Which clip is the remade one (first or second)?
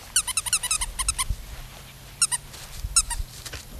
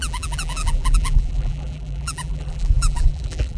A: second